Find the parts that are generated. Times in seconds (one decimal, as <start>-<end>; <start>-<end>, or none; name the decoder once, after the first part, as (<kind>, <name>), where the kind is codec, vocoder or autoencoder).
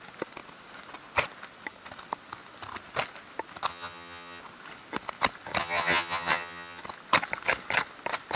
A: 3.7-4.4 (vocoder, HiFi-GAN); 5.6-6.8